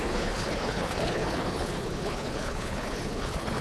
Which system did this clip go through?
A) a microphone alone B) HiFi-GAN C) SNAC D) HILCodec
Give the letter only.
D